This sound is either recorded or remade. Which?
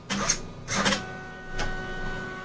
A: recorded